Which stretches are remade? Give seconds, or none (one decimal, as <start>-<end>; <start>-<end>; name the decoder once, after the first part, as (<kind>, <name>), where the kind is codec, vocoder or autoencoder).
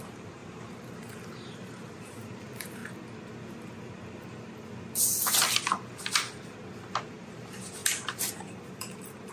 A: 0.0-2.8 (vocoder, BigVGAN v2); 7.1-9.3